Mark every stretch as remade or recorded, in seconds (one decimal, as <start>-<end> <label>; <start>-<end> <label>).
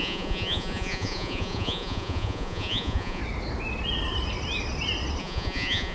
0.0-3.2 remade; 3.2-5.2 recorded; 5.2-5.9 remade